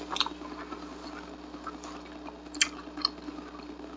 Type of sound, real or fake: real